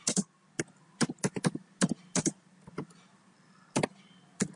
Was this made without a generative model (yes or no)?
yes